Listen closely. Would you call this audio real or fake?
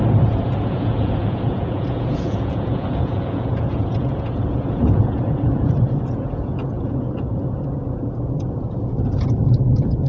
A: fake